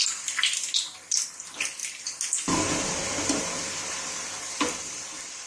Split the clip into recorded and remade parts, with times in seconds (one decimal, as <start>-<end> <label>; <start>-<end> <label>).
0.0-5.5 recorded